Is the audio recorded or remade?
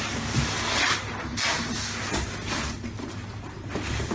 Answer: recorded